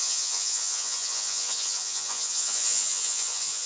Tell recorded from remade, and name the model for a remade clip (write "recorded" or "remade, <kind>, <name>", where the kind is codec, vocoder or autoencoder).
remade, vocoder, Vocos